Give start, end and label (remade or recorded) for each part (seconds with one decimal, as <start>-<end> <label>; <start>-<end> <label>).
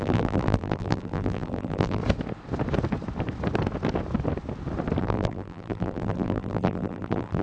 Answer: 0.0-2.0 remade; 2.0-5.0 recorded; 5.0-7.4 remade